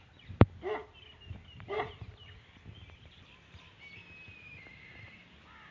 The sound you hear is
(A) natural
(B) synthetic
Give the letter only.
A